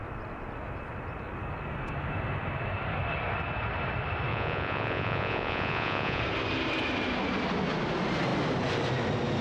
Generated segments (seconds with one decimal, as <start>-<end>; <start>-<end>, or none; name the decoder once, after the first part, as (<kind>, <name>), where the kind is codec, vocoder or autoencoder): 4.3-6.2 (vocoder, Vocos)